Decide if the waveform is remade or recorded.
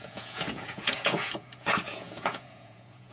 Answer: remade